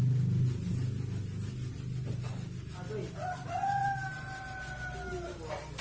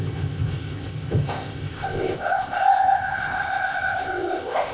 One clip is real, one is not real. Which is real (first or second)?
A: first